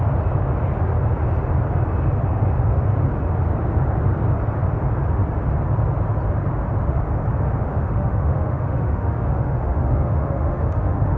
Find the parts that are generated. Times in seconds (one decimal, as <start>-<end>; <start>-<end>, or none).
7.7-11.2